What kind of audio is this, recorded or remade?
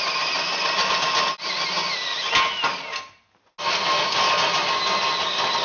recorded